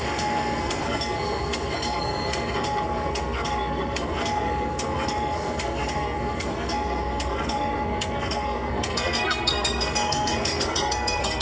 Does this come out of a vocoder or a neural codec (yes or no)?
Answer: yes